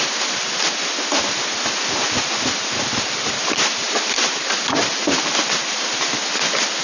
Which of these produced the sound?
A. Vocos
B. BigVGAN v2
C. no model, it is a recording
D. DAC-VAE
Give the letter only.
C